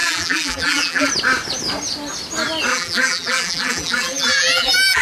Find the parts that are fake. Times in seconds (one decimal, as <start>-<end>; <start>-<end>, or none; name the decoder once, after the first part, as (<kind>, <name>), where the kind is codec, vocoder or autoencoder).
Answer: 0.0-1.1 (vocoder, BigVGAN v2); 2.7-5.0